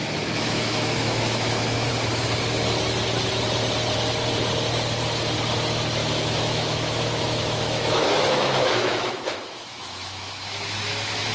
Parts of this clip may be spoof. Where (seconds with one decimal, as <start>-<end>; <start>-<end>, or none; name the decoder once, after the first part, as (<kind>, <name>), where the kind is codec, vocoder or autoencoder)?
0.0-1.9 (autoencoder, DAC-VAE); 6.0-11.3